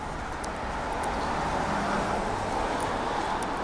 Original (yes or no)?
yes